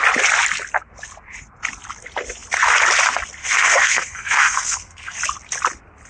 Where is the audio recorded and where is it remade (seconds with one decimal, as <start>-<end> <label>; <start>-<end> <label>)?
0.0-3.4 recorded; 3.4-5.2 remade; 5.2-6.1 recorded